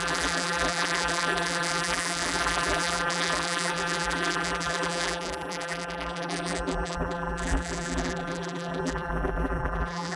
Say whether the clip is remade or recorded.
remade